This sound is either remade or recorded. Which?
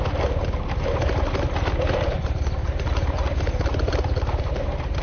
recorded